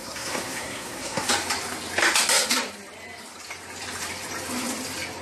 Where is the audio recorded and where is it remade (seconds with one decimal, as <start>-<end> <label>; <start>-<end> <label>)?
0.0-1.3 remade; 1.3-5.2 recorded